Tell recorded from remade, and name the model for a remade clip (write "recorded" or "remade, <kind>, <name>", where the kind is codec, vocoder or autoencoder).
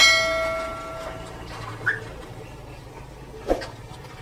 recorded